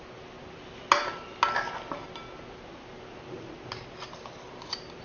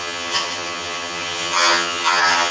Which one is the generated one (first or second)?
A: second